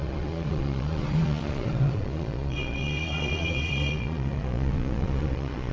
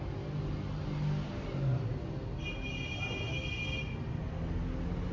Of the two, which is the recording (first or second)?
second